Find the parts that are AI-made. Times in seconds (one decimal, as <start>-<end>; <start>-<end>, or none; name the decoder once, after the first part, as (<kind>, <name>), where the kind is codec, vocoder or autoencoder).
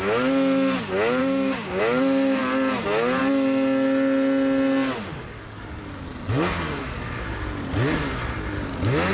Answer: 1.2-1.8 (codec, DAC)